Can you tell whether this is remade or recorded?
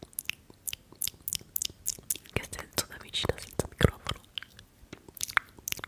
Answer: recorded